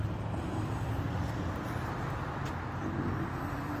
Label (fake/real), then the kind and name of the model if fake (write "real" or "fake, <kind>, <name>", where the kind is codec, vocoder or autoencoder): real